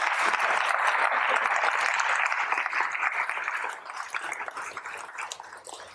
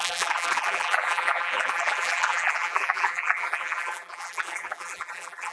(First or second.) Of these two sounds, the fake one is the second